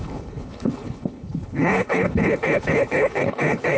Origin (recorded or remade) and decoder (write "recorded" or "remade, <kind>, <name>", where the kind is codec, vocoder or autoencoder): remade, codec, HILCodec